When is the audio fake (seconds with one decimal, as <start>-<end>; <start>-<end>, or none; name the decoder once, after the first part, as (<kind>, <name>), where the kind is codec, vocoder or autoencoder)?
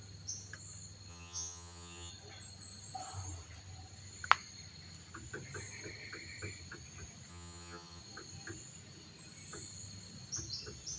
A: 1.1-2.1 (vocoder, HiFi-GAN); 7.3-8.0